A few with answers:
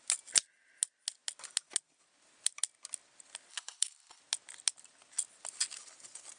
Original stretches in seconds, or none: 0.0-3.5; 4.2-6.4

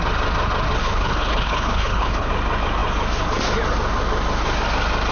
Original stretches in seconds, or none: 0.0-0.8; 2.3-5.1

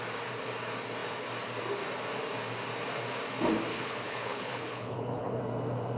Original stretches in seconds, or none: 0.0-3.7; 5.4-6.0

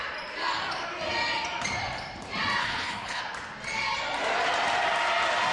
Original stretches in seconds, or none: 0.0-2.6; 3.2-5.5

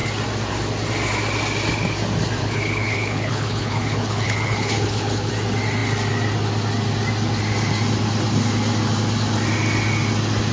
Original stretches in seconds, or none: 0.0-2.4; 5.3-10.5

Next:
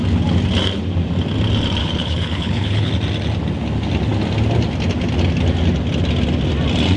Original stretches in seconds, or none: 0.0-1.8; 2.9-7.0

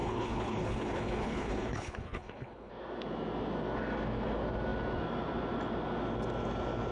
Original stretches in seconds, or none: 2.7-6.9

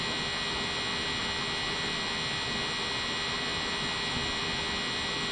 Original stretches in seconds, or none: 0.0-5.3